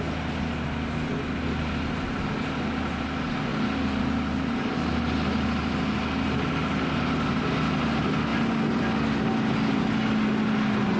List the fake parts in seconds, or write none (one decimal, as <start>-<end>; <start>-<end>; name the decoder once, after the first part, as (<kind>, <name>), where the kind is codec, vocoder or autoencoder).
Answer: none